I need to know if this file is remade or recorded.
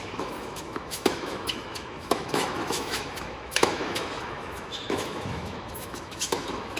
remade